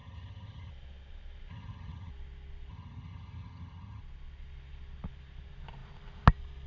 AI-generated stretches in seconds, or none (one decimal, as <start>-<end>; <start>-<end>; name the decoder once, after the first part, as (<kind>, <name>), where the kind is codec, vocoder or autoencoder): 0.0-0.7 (vocoder, HiFi-GAN); 1.5-2.1; 2.7-4.0